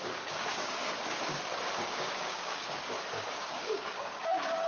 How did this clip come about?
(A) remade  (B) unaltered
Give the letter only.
A